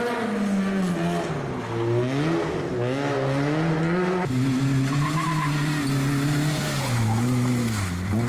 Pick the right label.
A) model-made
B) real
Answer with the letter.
B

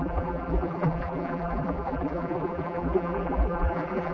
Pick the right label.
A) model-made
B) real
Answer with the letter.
A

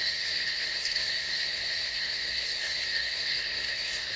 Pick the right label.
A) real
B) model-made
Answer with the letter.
B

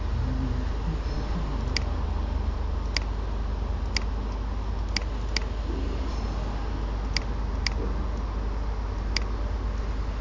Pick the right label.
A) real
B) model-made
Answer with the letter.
A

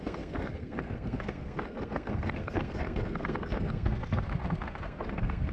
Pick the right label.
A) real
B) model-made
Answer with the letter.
B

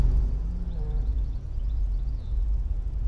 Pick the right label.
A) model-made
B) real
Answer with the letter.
A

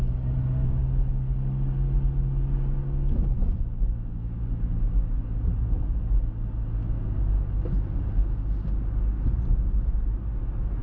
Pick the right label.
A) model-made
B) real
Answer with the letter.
B